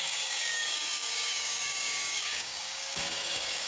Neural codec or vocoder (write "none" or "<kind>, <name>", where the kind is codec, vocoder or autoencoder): codec, DAC